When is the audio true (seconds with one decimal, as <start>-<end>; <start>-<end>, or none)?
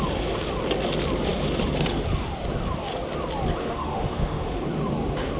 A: 0.0-3.6; 4.6-5.4